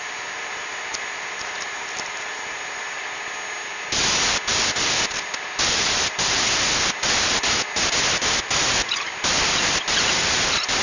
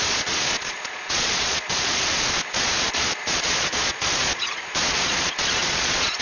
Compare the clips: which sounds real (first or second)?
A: first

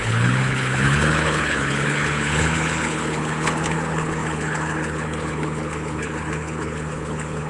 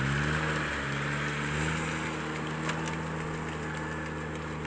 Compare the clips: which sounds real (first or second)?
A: second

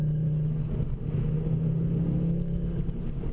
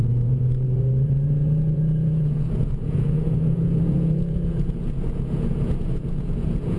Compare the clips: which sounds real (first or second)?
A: first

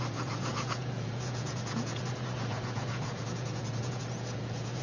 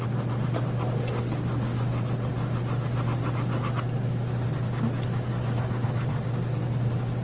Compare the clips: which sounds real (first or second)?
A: second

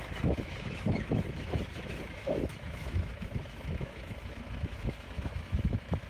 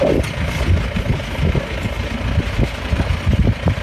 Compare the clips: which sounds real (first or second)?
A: second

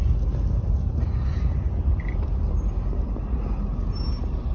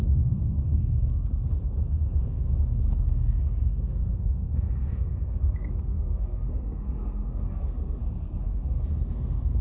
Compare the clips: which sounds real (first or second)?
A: first